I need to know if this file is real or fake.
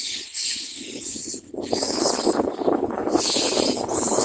fake